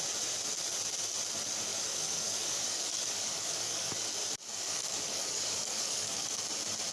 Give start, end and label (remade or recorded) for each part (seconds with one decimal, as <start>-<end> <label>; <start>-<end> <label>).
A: 0.0-1.7 recorded; 1.7-3.9 remade; 3.9-4.5 recorded; 4.5-6.4 remade; 6.4-6.9 recorded